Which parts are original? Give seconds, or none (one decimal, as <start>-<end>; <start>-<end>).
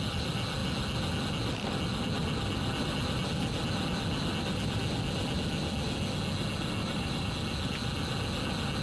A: 0.0-6.8; 7.3-8.8